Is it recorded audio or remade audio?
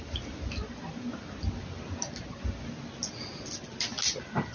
recorded